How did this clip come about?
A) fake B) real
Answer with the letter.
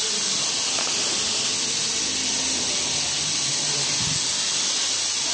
B